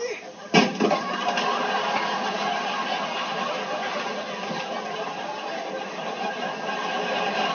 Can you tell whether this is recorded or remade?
recorded